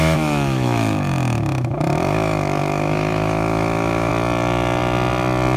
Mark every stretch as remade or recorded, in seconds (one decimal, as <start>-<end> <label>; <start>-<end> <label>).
0.0-4.1 remade; 4.1-5.6 recorded